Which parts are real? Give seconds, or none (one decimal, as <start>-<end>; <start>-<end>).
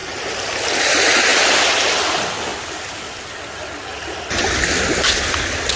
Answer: 0.0-5.8